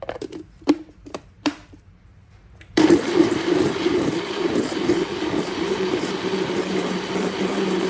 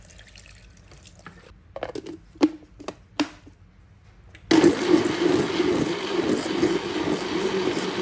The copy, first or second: first